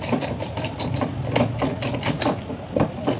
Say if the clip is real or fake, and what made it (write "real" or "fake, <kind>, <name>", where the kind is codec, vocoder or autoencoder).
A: real